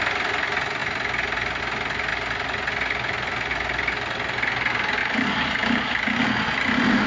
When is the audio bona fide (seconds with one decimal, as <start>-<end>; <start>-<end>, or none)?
0.0-5.0; 5.9-7.1